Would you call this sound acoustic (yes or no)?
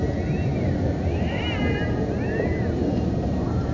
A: yes